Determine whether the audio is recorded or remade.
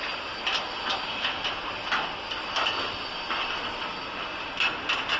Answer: recorded